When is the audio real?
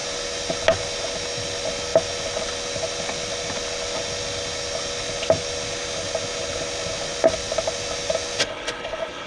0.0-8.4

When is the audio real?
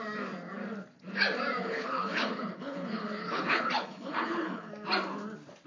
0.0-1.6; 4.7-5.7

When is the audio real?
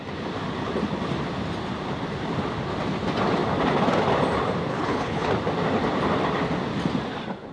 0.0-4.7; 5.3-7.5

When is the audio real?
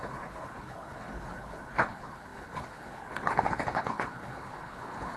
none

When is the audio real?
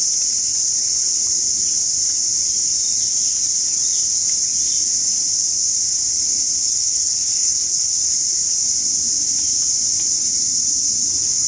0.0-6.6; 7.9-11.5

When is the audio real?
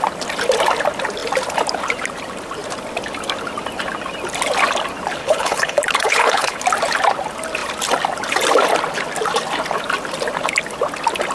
0.0-5.2; 6.6-11.3